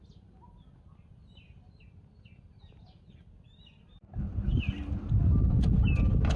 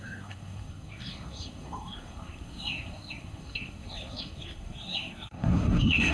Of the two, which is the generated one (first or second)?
second